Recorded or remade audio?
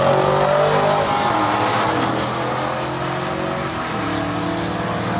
recorded